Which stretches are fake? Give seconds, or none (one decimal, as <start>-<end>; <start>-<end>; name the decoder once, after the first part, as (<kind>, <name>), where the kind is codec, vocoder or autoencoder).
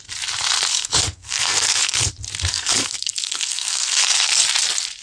0.7-2.1 (codec, SNAC); 2.5-4.4